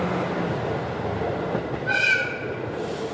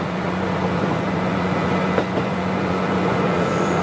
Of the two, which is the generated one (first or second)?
second